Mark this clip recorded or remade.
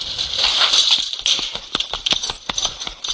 recorded